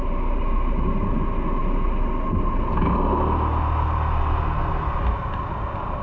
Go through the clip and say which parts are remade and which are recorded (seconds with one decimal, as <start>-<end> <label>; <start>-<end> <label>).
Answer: 0.0-6.0 recorded